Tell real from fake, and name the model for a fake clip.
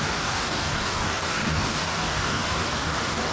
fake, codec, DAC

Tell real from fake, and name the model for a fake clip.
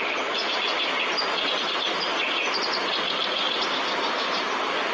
real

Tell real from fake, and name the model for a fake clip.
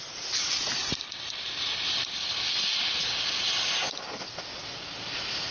fake, vocoder, BigVGAN v2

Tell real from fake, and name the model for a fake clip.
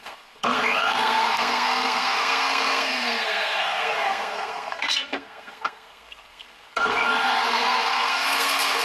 fake, codec, SNAC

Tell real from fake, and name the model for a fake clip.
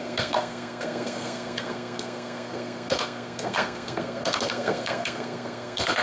fake, codec, SNAC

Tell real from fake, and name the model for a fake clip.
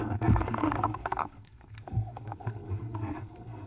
fake, codec, SNAC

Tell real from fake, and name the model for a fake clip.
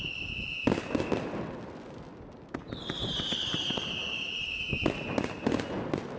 real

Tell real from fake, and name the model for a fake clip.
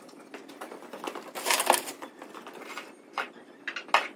real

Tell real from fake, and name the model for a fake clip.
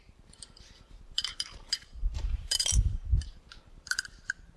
fake, vocoder, BigVGAN v2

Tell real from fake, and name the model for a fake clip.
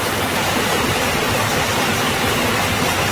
real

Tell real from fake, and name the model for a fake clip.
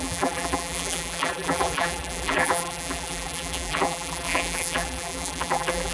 fake, vocoder, BigVGAN v2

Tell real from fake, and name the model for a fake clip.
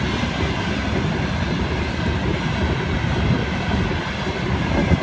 real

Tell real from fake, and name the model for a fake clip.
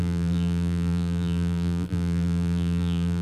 fake, vocoder, BigVGAN v2